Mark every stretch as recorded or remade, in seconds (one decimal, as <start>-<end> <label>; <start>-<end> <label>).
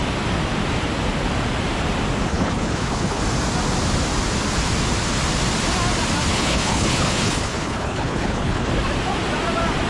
0.0-2.3 recorded; 2.3-3.2 remade; 3.2-6.3 recorded; 6.3-8.7 remade; 8.7-9.9 recorded